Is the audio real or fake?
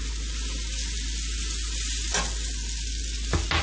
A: real